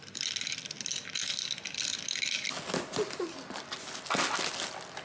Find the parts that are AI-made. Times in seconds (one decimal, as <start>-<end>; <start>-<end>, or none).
none